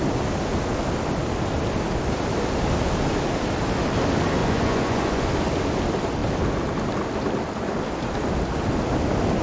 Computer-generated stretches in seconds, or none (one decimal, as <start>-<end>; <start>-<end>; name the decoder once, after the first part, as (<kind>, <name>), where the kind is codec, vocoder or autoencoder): 4.4-5.3 (vocoder, Vocos)